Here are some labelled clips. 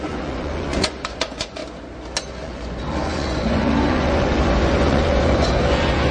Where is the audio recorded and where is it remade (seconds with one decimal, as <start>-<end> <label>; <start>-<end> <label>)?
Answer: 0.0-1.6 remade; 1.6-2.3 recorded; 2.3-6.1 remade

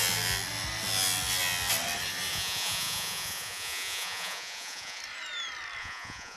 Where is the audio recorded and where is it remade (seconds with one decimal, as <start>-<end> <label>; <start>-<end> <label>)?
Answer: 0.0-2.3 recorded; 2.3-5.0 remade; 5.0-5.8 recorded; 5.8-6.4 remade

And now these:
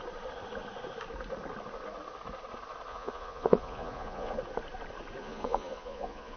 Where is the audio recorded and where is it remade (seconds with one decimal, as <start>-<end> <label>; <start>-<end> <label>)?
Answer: 0.0-2.9 recorded; 2.9-4.4 remade; 4.4-5.2 recorded; 5.2-6.4 remade

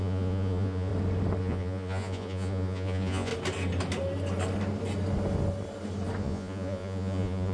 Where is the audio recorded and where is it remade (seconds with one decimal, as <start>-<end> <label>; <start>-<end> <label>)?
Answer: 0.0-0.9 remade; 0.9-1.4 recorded; 1.4-3.3 remade; 3.3-6.2 recorded; 6.2-7.5 remade

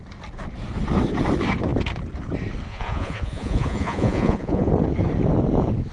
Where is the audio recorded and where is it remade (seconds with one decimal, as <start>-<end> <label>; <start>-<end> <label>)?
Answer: 0.0-2.7 recorded; 2.7-4.7 remade; 4.7-5.9 recorded

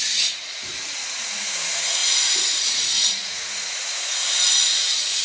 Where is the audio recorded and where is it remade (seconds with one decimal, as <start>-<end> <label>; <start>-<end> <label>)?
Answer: 0.0-5.2 remade